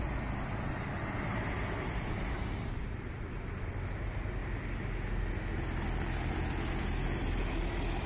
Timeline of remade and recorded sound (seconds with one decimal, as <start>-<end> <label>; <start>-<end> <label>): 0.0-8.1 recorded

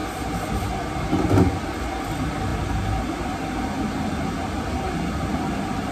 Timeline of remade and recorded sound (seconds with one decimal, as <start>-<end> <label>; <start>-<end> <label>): 0.0-5.9 recorded

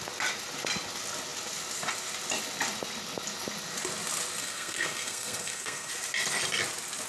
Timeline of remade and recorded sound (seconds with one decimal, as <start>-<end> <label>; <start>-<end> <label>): 0.0-4.4 recorded; 4.4-5.9 remade; 5.9-7.1 recorded

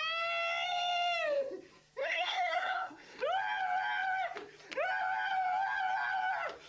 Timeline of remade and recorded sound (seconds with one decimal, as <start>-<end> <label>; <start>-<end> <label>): 0.0-2.0 recorded; 2.0-3.2 remade; 3.2-6.7 recorded

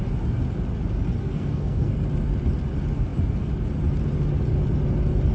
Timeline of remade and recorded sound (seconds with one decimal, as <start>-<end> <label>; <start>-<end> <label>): 0.0-1.2 recorded; 1.2-2.0 remade; 2.0-5.3 recorded

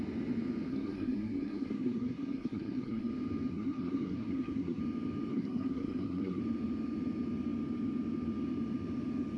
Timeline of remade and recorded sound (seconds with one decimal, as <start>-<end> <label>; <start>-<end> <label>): 0.0-0.7 recorded; 0.7-3.1 remade; 3.1-3.5 recorded; 3.5-4.8 remade; 4.8-5.3 recorded; 5.3-6.4 remade; 6.4-9.4 recorded

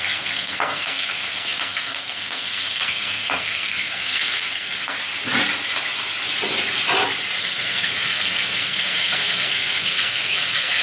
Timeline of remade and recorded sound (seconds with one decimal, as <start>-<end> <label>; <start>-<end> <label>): 0.0-5.0 remade; 5.0-7.4 recorded; 7.4-10.8 remade

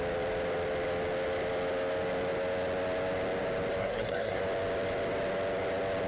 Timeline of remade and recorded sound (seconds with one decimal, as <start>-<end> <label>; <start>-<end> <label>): 0.0-3.8 recorded; 3.8-4.4 remade; 4.4-6.1 recorded